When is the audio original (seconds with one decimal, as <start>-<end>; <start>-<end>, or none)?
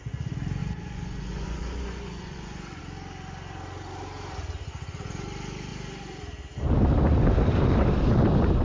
0.0-0.6; 2.8-8.6